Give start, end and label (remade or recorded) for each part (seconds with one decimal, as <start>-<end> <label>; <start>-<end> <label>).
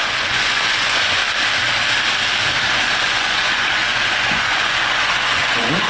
0.0-1.2 remade; 1.2-2.7 recorded; 2.7-5.9 remade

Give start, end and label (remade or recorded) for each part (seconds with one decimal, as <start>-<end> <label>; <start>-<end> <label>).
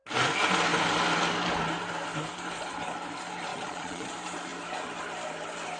0.0-3.5 recorded; 3.5-4.1 remade; 4.1-5.8 recorded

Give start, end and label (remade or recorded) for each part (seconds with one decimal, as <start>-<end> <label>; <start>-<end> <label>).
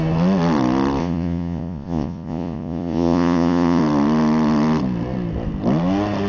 0.0-1.0 recorded; 1.0-3.8 remade; 3.8-6.3 recorded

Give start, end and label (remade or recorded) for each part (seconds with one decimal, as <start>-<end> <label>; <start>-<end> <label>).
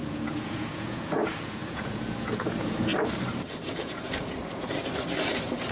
0.0-2.9 remade; 2.9-3.5 recorded; 3.5-4.4 remade; 4.4-5.7 recorded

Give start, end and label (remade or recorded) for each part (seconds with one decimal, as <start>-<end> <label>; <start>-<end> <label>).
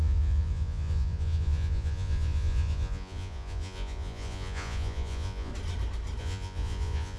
0.0-5.5 remade; 5.5-6.2 recorded; 6.2-7.2 remade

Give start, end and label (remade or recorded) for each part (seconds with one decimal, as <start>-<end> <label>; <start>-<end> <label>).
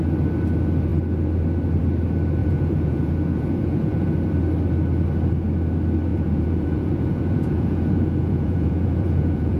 0.0-2.4 recorded; 2.4-4.1 remade; 4.1-6.1 recorded; 6.1-9.6 remade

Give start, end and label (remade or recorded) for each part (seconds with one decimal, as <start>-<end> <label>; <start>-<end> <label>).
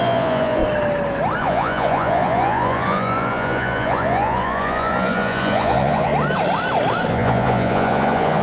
0.0-0.6 remade; 0.6-1.4 recorded; 1.4-6.1 remade; 6.1-7.1 recorded; 7.1-8.4 remade